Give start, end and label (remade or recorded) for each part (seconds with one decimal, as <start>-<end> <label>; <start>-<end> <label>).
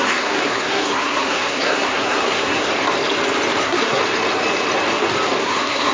0.0-2.7 remade; 2.7-3.6 recorded; 3.6-4.0 remade; 4.0-5.4 recorded; 5.4-5.9 remade